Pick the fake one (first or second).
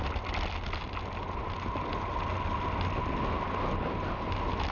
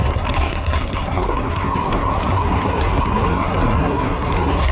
second